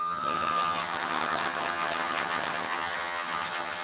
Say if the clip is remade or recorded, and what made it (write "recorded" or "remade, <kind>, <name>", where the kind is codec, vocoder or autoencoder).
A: remade, vocoder, HiFi-GAN